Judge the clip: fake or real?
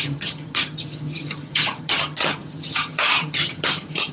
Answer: fake